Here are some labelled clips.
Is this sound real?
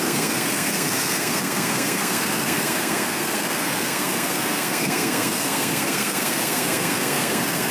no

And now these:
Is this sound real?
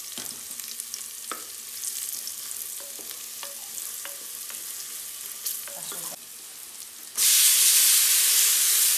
yes